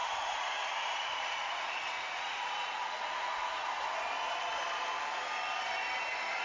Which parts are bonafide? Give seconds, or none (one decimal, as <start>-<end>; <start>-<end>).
3.8-6.4